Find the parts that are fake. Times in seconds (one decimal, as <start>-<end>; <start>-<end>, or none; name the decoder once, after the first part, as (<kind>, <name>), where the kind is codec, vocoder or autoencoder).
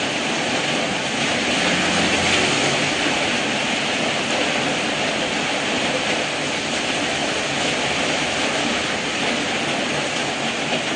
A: 7.2-8.5 (vocoder, BigVGAN v2)